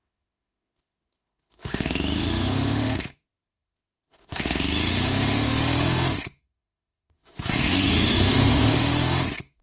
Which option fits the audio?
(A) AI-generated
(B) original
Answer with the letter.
A